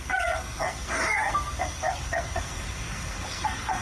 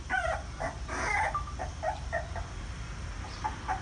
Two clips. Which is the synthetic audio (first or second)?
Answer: first